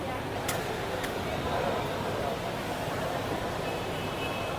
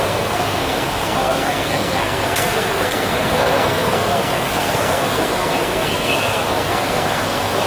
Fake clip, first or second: second